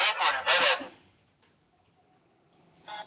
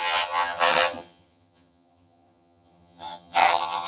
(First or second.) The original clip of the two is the first